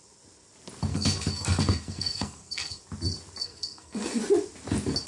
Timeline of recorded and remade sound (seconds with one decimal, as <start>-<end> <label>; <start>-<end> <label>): 0.0-0.9 recorded; 0.9-2.8 remade; 2.8-3.4 recorded; 3.4-4.2 remade; 4.2-5.1 recorded